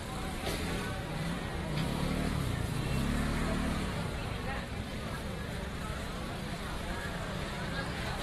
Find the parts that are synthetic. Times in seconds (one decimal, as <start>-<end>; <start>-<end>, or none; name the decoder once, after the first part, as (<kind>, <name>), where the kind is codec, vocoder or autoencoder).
0.0-0.5 (vocoder, BigVGAN v2); 1.2-2.9; 3.7-8.2